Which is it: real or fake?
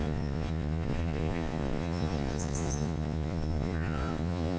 fake